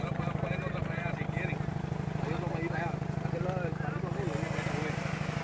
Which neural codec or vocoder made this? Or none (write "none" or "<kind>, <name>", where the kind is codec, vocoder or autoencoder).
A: none